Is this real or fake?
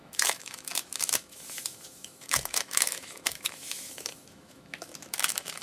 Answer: fake